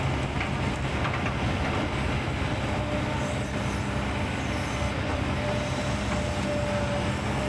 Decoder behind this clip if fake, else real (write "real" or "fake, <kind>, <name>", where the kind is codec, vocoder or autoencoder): real